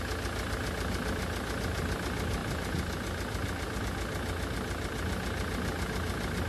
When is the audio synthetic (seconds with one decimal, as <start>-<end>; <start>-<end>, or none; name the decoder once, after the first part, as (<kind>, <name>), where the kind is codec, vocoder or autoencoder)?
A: none